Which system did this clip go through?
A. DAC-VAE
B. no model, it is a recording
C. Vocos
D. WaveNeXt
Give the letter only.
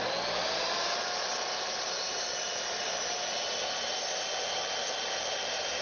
B